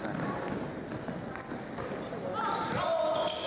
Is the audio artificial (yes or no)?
no